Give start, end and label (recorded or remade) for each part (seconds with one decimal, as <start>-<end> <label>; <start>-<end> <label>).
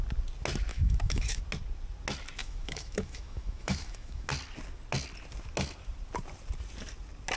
0.0-0.7 recorded; 0.7-1.4 remade; 1.4-2.4 recorded; 2.4-4.3 remade; 4.3-7.4 recorded